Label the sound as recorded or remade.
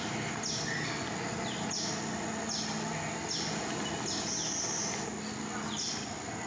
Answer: recorded